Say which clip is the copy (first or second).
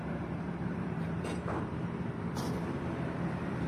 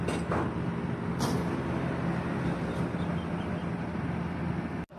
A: first